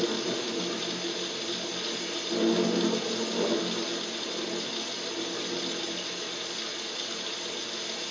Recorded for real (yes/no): yes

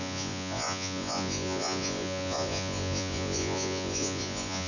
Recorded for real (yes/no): no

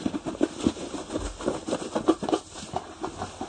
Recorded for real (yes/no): yes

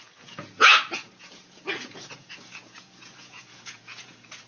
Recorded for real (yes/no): no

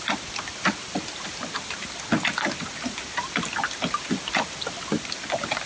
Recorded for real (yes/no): yes